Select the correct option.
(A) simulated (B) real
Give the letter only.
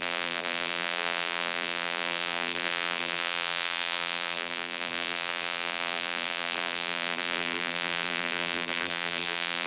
A